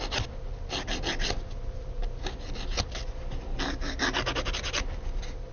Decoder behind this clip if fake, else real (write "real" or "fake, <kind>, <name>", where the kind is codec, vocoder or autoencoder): real